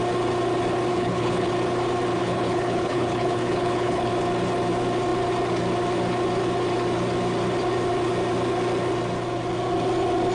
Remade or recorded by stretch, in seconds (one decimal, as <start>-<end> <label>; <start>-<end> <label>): 0.0-0.9 recorded; 0.9-1.5 remade; 1.5-2.2 recorded; 2.2-4.1 remade; 4.1-10.3 recorded